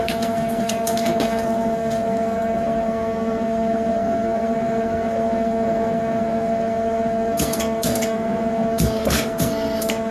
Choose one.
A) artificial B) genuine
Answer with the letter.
A